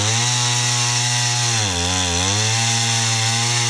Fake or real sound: real